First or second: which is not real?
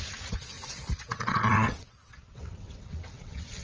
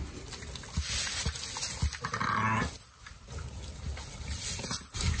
first